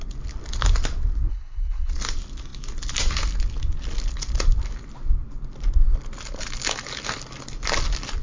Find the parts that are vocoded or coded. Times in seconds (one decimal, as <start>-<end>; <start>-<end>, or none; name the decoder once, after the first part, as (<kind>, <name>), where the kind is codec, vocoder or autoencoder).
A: 1.3-1.9 (codec, HILCodec)